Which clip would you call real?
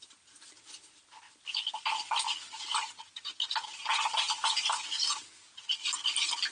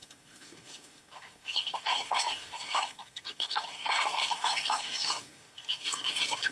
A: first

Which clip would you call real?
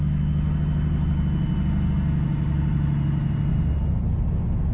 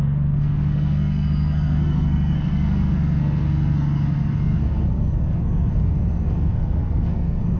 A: first